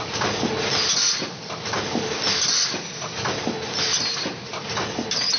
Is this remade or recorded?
recorded